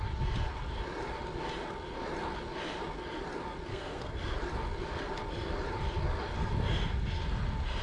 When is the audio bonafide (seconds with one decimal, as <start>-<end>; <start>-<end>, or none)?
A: 0.0-3.7; 4.2-7.8

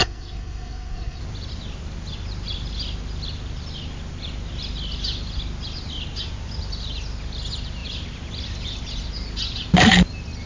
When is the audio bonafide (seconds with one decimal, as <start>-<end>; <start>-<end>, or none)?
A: 1.2-10.5

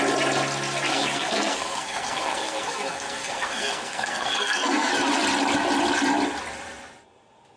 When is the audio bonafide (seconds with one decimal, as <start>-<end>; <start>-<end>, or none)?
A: 0.0-0.9; 4.9-7.6

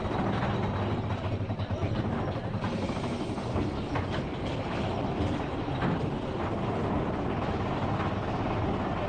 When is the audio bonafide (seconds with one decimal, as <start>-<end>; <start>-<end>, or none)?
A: 0.0-9.1